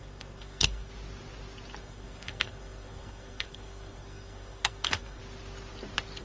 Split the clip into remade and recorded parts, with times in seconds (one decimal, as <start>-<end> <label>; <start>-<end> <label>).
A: 0.0-0.9 remade; 0.9-1.8 recorded; 1.8-5.2 remade; 5.2-6.2 recorded

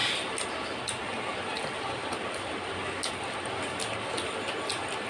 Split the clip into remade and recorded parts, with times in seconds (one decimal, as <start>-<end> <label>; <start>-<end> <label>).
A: 0.0-5.1 recorded

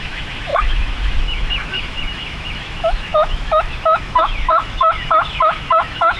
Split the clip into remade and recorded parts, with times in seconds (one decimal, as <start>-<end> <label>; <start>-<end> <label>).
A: 0.0-6.2 remade

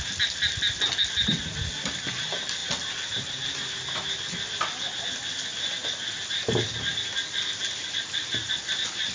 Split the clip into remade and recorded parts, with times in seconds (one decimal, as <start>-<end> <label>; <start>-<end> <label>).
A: 0.0-9.1 recorded

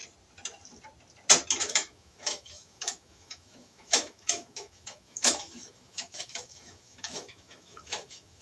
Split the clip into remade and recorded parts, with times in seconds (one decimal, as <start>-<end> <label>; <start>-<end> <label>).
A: 0.0-1.6 recorded; 1.6-8.4 remade

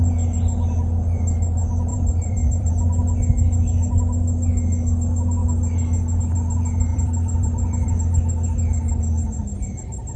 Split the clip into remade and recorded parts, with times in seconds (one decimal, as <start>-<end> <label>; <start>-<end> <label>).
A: 0.0-1.9 recorded; 1.9-2.7 remade; 2.7-6.9 recorded; 6.9-7.9 remade; 7.9-10.2 recorded

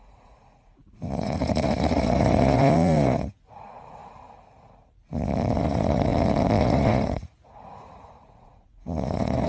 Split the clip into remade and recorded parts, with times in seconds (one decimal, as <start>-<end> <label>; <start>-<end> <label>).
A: 0.0-4.0 remade; 4.0-5.6 recorded; 5.6-6.1 remade; 6.1-6.6 recorded; 6.6-9.5 remade

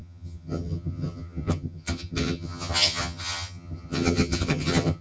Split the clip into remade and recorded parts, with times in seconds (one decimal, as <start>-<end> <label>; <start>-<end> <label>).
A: 0.0-5.0 remade